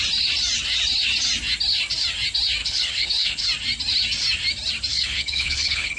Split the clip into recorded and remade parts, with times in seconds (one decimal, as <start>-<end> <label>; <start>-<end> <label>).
0.0-2.6 recorded; 2.6-3.4 remade; 3.4-4.9 recorded; 4.9-6.0 remade